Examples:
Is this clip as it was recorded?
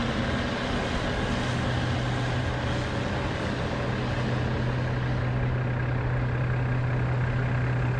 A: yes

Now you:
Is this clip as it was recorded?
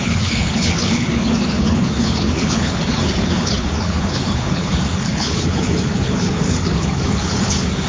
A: no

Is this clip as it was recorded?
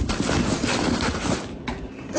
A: yes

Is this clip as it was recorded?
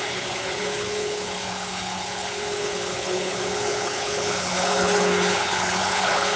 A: no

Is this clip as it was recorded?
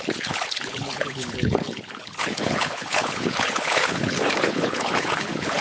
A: no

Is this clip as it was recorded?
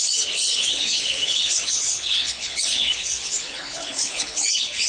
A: no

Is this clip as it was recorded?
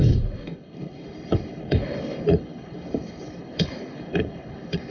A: no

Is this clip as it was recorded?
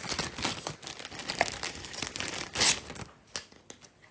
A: yes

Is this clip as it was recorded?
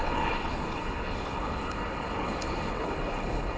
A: no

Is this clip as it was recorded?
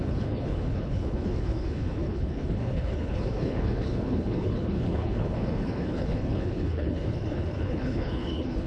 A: no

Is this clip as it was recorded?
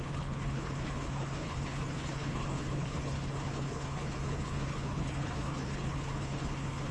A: no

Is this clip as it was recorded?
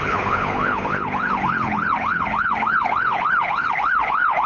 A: no